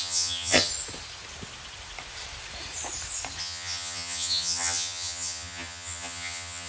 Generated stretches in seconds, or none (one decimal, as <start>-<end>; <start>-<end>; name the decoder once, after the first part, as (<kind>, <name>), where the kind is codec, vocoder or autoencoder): 0.0-0.7 (vocoder, HiFi-GAN); 3.4-6.7